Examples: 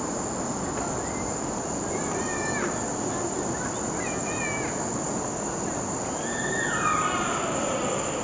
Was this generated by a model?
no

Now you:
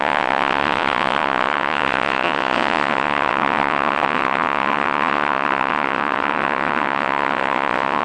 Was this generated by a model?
yes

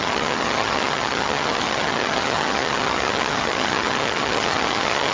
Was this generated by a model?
yes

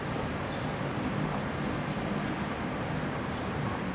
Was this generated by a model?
no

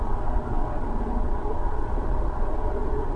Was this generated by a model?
yes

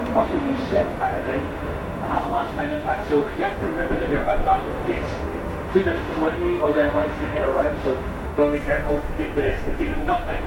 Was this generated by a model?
yes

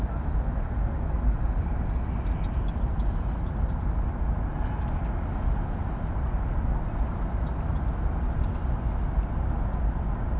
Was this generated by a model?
no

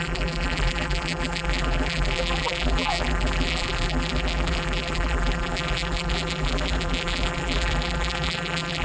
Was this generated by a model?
yes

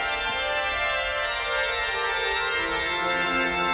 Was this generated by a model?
no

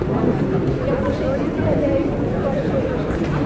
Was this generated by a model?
yes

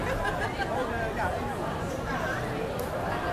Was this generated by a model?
no